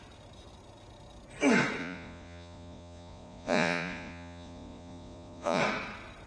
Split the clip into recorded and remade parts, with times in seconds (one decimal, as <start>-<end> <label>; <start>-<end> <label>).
0.0-1.8 recorded; 1.8-5.6 remade; 5.6-6.3 recorded